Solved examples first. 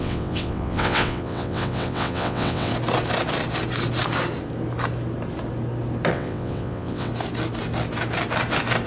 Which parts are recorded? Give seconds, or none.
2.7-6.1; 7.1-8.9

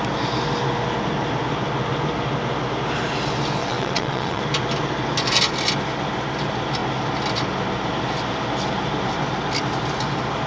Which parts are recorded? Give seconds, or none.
0.0-3.6; 4.4-10.5

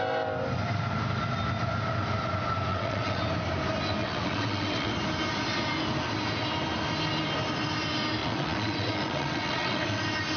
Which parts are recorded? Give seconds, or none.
0.0-2.7; 3.2-4.0; 4.9-8.2; 10.0-10.4

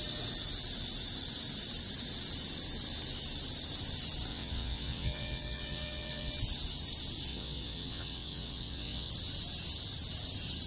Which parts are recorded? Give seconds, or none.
0.0-4.3; 6.3-7.3; 9.1-10.7